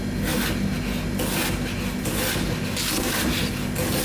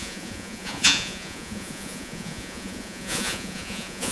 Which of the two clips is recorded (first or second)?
first